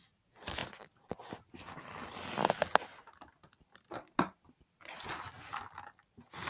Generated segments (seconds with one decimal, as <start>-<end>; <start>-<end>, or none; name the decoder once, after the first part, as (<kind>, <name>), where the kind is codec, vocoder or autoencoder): none